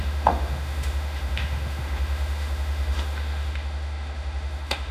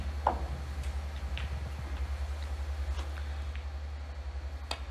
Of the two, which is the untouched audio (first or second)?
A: second